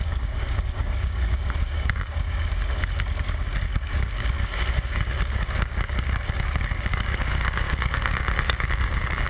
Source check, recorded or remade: remade